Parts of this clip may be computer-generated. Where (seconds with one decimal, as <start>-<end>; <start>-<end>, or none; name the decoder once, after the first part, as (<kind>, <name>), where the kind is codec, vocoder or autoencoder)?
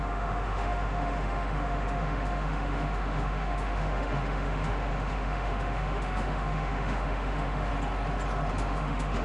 0.0-7.7 (autoencoder, DAC-VAE); 8.5-9.2